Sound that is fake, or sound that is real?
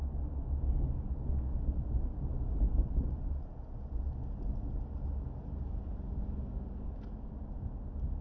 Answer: real